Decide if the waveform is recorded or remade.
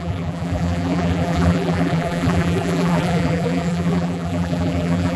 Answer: remade